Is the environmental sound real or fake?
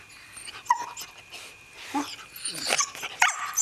real